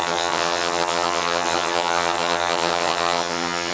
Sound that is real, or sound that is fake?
fake